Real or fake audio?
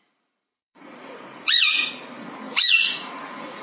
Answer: fake